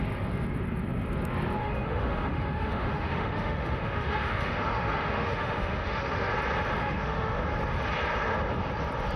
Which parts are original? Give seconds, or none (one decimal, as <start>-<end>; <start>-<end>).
0.0-1.6; 6.3-6.8; 7.4-9.2